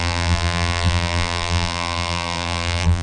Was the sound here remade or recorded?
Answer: remade